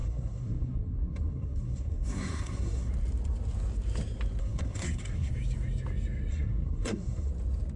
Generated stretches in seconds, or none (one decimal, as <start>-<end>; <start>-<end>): 0.0-2.9; 4.4-5.3; 6.3-7.3

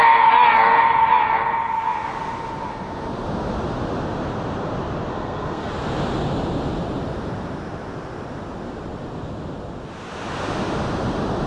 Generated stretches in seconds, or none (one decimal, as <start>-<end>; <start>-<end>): 5.1-5.7

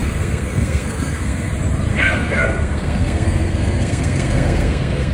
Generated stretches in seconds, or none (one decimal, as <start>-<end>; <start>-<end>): 0.0-1.5; 1.9-5.1

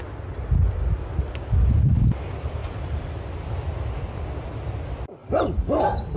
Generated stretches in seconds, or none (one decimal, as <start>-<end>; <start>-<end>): 2.6-3.2; 5.2-6.2

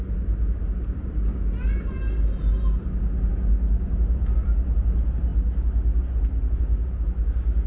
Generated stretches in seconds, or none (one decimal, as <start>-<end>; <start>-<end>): none

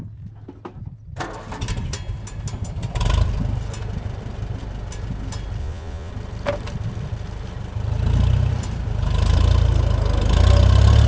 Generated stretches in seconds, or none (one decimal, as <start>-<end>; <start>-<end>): 5.6-6.1